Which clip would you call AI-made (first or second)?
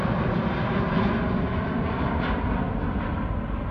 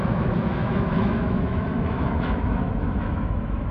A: second